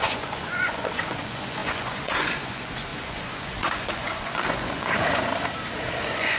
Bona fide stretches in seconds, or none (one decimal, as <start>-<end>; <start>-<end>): 5.3-6.0